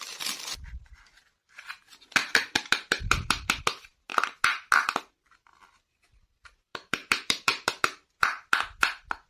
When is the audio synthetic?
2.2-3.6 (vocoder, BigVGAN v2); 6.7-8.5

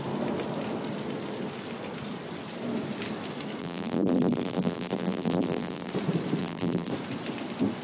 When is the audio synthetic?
3.6-5.9 (vocoder, BigVGAN v2); 6.4-6.9

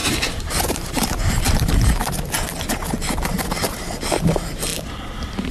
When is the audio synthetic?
0.0-2.2 (vocoder, BigVGAN v2); 3.3-3.9